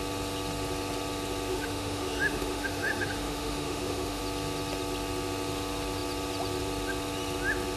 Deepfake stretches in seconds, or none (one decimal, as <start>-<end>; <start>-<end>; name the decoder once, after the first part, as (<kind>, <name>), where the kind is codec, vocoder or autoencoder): 1.5-4.2 (autoencoder, DAC-VAE)